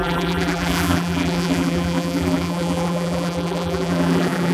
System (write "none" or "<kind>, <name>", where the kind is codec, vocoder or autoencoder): vocoder, BigVGAN v2